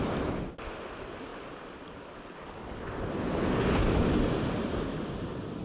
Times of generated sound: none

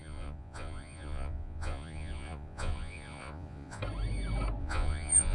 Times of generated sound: 0.0-3.8 (vocoder, Vocos); 4.6-5.3

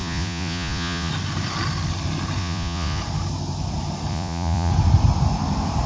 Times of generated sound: 0.0-1.1 (vocoder, Vocos); 2.4-3.0; 4.1-4.7

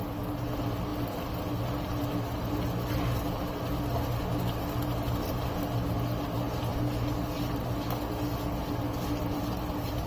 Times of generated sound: none

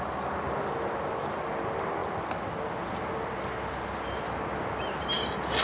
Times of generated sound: none

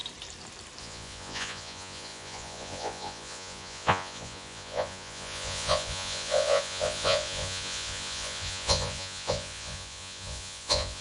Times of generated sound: 0.8-11.0 (vocoder, Vocos)

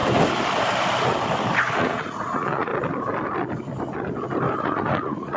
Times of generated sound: 1.8-2.7 (vocoder, Vocos); 4.6-5.4

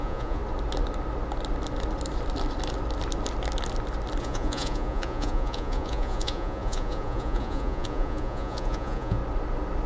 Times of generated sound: 0.0-0.4 (vocoder, Vocos); 4.2-9.2